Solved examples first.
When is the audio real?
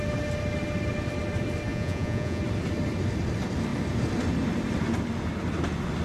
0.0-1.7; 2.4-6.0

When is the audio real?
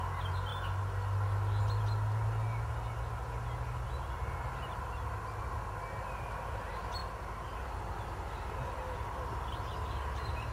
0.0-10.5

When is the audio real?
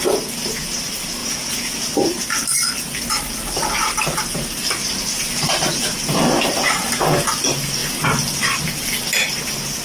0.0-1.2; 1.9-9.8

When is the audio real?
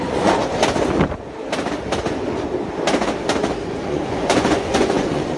0.4-3.6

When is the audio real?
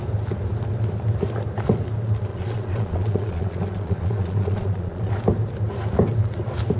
0.0-2.3; 5.1-6.8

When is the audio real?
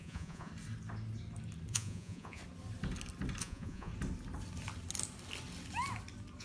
0.5-1.7; 2.4-3.4; 3.9-6.4